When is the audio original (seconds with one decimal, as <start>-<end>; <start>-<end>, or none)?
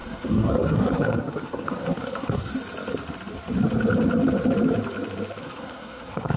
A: 2.5-5.4